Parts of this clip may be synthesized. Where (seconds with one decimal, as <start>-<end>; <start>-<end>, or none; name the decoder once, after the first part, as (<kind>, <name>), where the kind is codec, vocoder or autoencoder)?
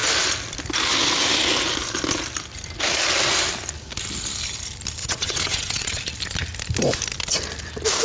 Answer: 5.0-6.0 (vocoder, WaveNeXt)